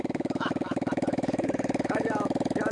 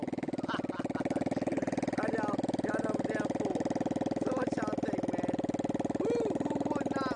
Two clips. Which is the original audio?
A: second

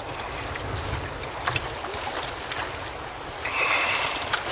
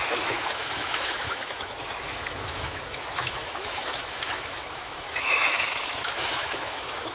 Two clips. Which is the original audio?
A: first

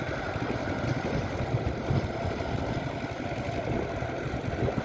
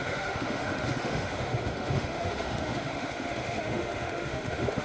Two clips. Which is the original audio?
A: first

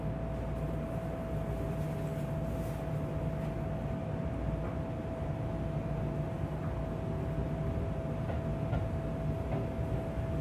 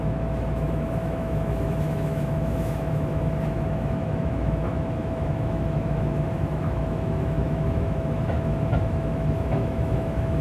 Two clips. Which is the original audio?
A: first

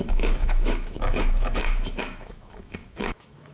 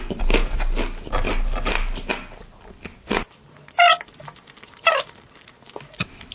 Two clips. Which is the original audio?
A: second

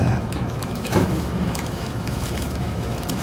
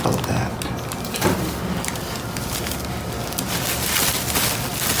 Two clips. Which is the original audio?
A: second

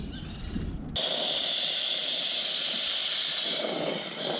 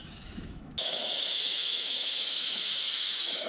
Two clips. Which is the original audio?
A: first